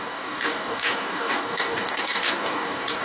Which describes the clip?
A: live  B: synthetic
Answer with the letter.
B